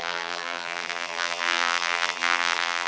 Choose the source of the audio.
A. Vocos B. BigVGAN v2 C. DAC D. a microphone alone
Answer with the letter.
B